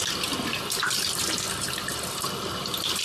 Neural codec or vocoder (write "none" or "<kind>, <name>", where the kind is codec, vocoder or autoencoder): none